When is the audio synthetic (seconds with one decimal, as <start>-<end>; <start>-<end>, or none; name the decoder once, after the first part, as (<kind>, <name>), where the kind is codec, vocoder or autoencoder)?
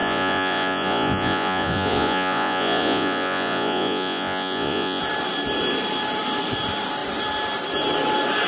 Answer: 0.0-5.0 (vocoder, Vocos)